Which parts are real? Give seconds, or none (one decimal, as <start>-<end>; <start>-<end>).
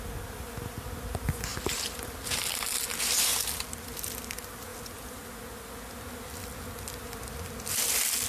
0.0-1.5; 2.1-3.3; 4.1-4.7; 5.3-8.3